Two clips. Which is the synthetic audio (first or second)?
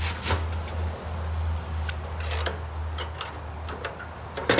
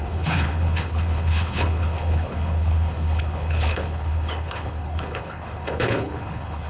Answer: second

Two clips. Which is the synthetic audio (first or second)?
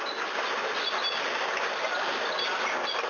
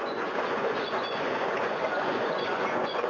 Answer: second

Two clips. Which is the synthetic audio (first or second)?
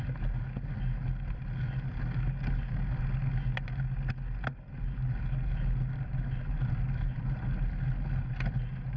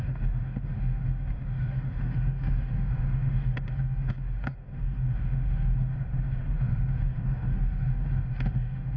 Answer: second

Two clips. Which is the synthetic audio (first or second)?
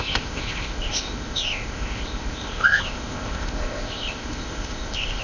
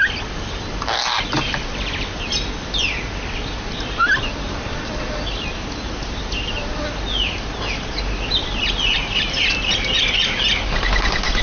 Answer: first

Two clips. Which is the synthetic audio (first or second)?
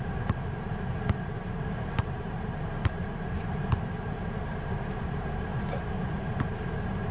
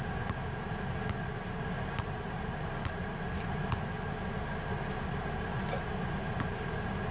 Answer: first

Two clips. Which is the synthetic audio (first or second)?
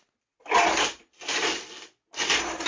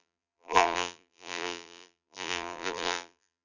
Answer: second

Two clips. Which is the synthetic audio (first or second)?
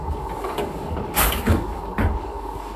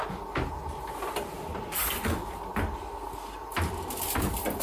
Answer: first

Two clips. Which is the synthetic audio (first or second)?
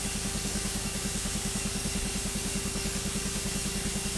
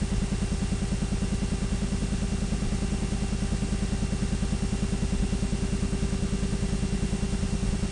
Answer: first